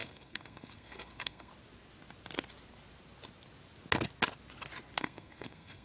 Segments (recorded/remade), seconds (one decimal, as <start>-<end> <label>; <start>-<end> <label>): 0.0-1.5 remade; 1.5-5.0 recorded; 5.0-5.8 remade